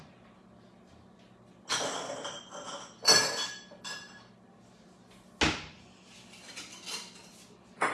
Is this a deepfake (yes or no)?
no